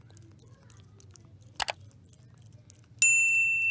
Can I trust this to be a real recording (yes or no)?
yes